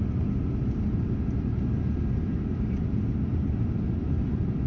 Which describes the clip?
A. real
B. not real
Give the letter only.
A